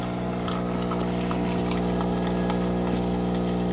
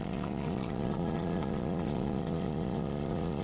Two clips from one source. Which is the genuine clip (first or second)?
first